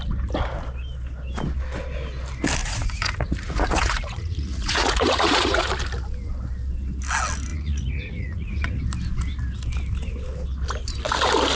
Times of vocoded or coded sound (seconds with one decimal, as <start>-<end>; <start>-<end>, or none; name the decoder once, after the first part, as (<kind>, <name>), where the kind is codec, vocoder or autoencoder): 2.6-5.7 (vocoder, Vocos); 7.5-8.8